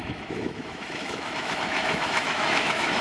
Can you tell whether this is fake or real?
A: fake